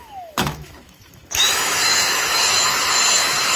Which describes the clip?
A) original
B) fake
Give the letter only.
B